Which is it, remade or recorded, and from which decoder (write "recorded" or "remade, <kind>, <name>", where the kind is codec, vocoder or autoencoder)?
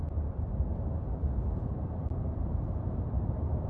remade, vocoder, BigVGAN v2